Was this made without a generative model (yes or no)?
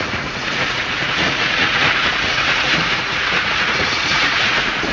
no